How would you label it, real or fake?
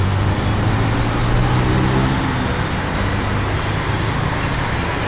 real